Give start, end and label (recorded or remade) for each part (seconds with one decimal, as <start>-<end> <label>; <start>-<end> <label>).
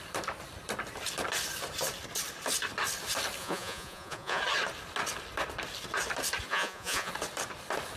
0.0-3.4 recorded; 3.4-4.4 remade; 4.4-6.5 recorded; 6.5-7.1 remade; 7.1-8.0 recorded